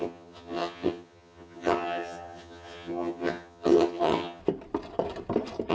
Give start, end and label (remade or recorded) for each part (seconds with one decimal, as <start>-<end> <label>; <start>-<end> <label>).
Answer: 0.0-4.4 remade; 4.4-5.7 recorded

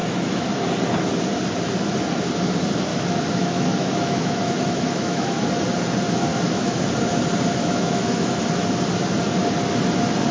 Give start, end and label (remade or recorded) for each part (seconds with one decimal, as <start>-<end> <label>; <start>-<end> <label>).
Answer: 0.0-0.6 remade; 0.6-2.9 recorded; 2.9-5.5 remade; 5.5-6.3 recorded; 6.3-6.9 remade; 6.9-7.6 recorded; 7.6-8.4 remade; 8.4-10.3 recorded